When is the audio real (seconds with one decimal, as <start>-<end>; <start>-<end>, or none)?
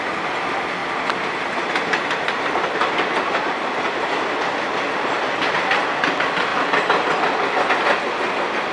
0.0-8.7